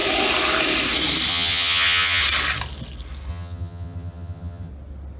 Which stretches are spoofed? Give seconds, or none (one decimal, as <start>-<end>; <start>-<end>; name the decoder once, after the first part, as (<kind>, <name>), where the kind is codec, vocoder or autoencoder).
1.3-2.2 (vocoder, HiFi-GAN); 3.3-4.7